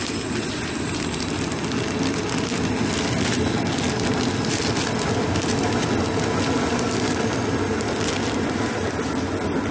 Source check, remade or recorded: recorded